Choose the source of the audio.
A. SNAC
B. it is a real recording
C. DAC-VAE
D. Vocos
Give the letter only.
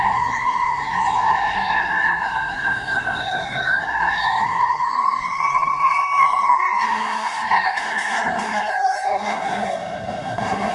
A